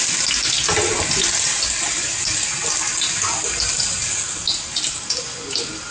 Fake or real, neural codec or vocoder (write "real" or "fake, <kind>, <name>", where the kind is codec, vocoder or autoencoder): real